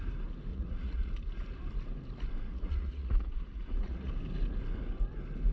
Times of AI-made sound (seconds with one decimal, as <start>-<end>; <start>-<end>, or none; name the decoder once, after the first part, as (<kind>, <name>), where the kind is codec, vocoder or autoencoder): 0.5-1.1 (vocoder, Vocos); 2.5-4.1